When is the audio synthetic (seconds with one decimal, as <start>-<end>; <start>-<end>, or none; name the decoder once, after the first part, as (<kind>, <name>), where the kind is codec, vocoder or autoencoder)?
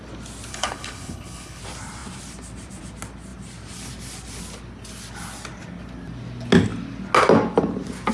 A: 0.5-1.6 (codec, HILCodec)